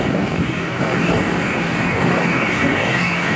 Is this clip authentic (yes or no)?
no